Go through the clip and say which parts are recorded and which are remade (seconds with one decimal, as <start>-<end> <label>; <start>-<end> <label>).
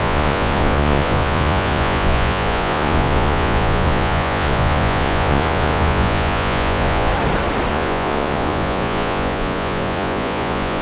0.0-7.1 remade; 7.1-7.7 recorded; 7.7-10.8 remade